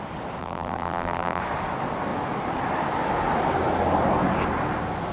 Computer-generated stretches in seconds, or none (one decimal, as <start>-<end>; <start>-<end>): 0.4-1.4